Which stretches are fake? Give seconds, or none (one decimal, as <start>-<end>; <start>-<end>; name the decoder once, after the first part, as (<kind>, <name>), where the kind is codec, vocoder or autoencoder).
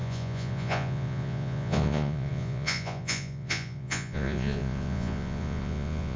0.0-6.2 (vocoder, Vocos)